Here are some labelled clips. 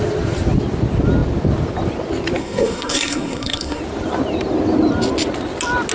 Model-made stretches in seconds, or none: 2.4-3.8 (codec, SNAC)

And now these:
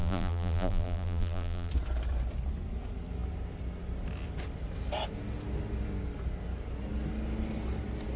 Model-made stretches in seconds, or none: 0.0-1.7 (vocoder, BigVGAN v2)